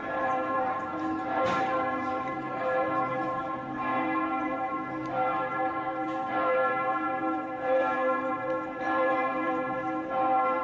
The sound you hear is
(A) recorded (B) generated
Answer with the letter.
B